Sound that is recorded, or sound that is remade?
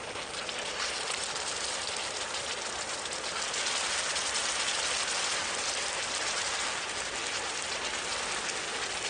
recorded